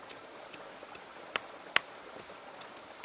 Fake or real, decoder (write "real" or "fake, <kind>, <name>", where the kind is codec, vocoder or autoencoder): real